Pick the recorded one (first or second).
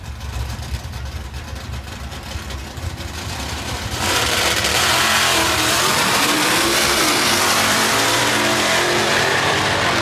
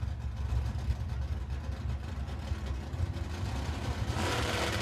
second